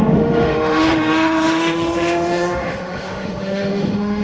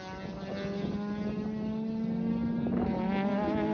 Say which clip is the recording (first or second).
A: second